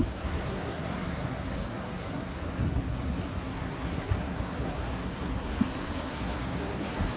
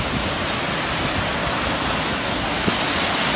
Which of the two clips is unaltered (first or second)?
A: second